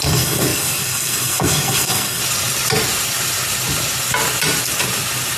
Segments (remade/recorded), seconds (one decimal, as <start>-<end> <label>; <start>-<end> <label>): 0.0-2.2 remade; 2.2-5.4 recorded